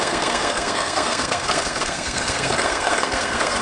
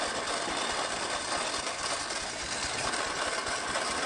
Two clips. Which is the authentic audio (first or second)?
second